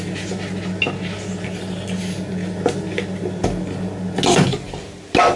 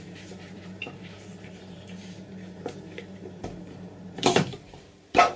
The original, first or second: first